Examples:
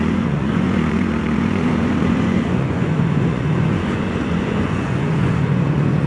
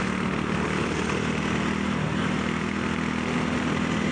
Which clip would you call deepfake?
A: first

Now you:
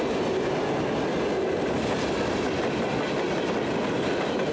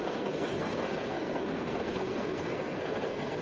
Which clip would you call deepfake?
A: second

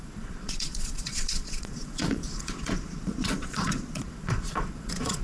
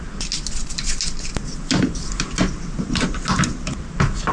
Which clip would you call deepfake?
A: first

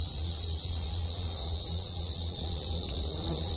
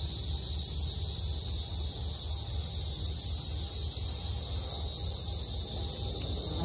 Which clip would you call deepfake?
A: first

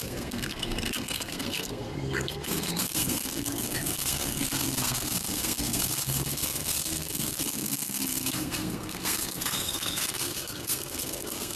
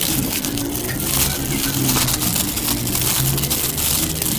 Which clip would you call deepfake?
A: first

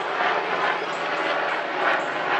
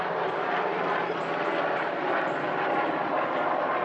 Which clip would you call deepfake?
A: second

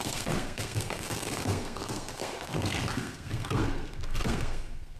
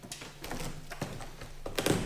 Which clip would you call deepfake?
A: first